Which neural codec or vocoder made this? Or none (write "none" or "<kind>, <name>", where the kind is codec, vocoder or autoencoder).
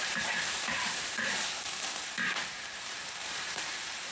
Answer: vocoder, BigVGAN v2